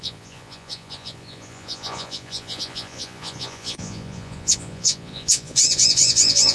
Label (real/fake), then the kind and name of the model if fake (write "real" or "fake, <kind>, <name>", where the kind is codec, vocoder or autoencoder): fake, vocoder, Vocos